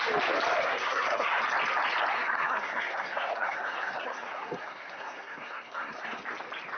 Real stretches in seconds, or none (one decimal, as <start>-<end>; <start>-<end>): 0.0-0.6; 1.4-2.1; 6.2-6.8